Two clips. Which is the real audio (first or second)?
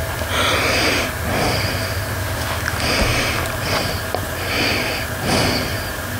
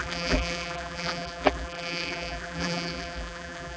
first